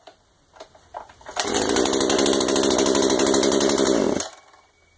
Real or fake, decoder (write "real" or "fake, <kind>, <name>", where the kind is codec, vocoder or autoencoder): real